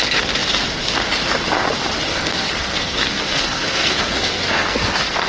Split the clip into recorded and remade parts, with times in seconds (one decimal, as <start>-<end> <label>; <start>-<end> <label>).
0.0-2.1 recorded; 2.1-5.3 remade